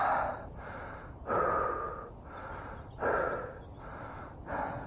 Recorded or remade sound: recorded